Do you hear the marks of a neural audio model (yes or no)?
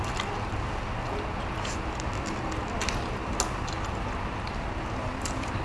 no